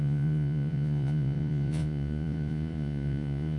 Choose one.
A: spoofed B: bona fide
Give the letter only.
A